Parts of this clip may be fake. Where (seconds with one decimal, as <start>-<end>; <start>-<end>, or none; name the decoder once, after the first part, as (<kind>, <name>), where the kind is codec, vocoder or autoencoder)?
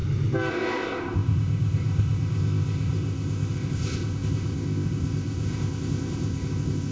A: 0.5-6.9 (codec, ZipCodec)